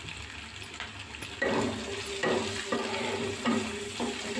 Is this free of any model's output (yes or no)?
no